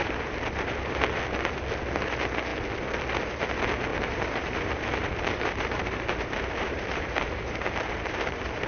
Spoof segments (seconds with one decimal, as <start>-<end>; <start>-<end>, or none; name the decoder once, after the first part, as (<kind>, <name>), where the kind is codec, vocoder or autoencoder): 0.0-1.2 (vocoder, BigVGAN v2); 3.9-8.7